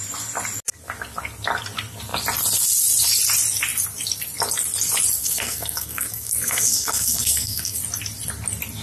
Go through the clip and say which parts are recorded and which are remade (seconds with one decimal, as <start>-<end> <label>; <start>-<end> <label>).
0.0-5.2 recorded; 5.2-7.8 remade; 7.8-8.8 recorded